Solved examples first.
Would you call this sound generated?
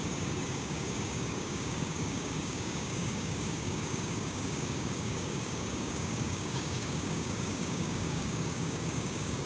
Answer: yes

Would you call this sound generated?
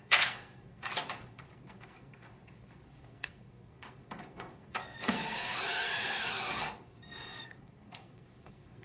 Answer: yes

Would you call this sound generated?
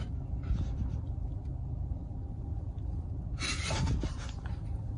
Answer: no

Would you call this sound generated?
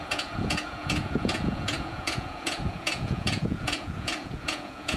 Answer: yes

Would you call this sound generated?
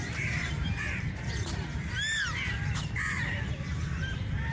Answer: yes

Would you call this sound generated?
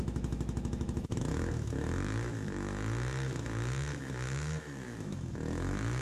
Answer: yes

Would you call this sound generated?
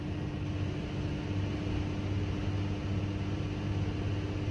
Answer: no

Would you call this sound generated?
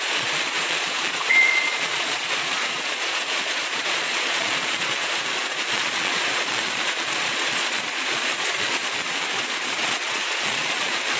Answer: yes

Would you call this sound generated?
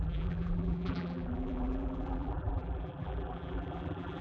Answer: yes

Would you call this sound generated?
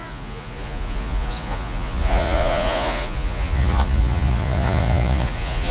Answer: yes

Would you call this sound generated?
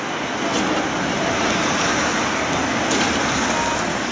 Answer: no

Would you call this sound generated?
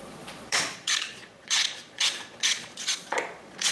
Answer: yes